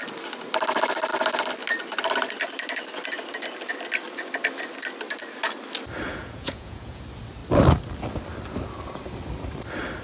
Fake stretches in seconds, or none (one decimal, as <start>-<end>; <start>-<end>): 6.1-7.0